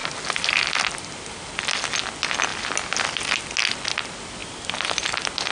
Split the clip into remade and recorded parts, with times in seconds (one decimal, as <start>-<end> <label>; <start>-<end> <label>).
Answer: 0.0-5.5 recorded